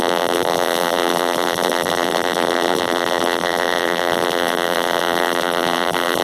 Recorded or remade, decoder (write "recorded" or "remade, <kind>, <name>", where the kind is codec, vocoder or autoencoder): remade, vocoder, BigVGAN v2